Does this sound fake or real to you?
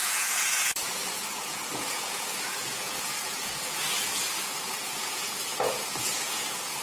fake